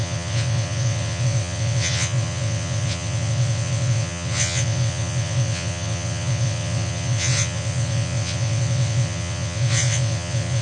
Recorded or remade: remade